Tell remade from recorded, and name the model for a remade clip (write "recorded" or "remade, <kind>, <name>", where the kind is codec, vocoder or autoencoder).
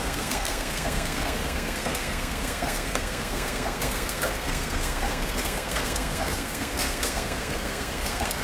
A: remade, codec, SNAC